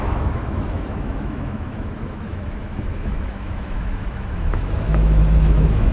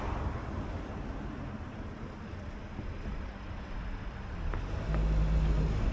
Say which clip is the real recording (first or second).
second